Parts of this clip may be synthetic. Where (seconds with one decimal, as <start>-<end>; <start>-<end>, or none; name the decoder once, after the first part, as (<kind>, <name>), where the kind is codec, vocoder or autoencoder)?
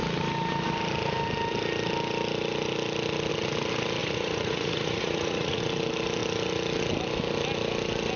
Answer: 4.0-5.6 (vocoder, Vocos)